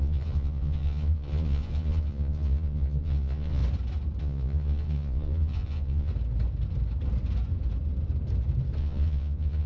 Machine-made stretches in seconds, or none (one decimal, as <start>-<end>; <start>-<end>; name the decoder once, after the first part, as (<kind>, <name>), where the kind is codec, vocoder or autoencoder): 0.0-3.6 (vocoder, Vocos); 4.2-6.1; 8.8-9.7